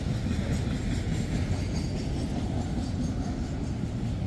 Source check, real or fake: real